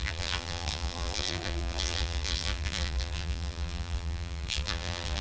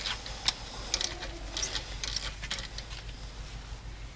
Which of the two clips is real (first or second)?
second